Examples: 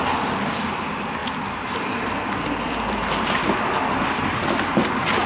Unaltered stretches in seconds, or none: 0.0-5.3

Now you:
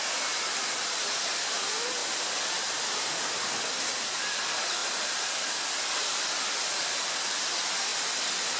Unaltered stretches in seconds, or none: 7.9-8.6

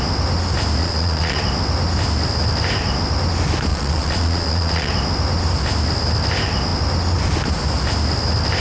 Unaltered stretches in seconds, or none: 0.0-0.8; 1.4-3.7; 4.9-8.6

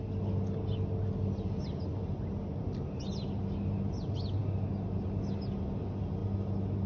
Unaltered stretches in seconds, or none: 0.0-6.9

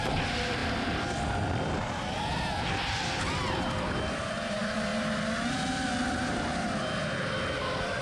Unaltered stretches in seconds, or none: 4.9-5.5; 7.0-7.6

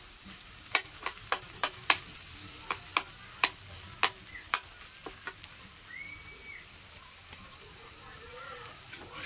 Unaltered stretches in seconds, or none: 2.9-6.8